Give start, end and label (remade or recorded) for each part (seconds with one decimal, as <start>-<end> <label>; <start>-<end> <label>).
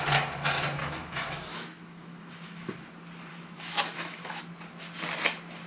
0.0-0.8 recorded; 0.8-2.7 remade; 2.7-3.3 recorded; 3.3-4.4 remade; 4.4-5.7 recorded